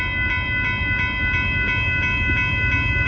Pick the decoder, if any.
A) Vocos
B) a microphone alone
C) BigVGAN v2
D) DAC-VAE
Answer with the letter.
B